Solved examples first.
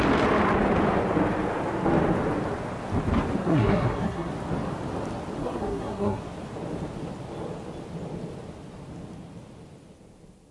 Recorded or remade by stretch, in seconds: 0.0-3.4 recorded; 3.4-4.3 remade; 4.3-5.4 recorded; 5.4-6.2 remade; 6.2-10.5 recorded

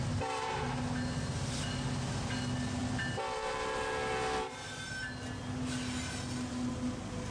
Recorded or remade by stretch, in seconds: 0.0-7.3 recorded